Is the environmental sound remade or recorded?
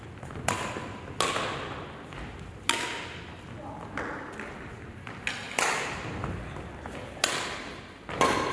recorded